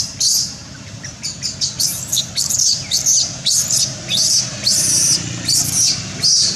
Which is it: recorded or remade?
recorded